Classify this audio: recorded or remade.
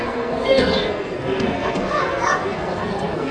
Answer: remade